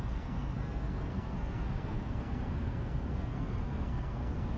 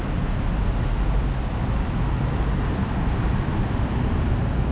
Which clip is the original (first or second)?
second